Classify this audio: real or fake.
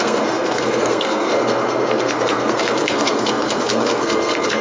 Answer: fake